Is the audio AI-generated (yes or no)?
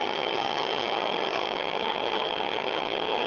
yes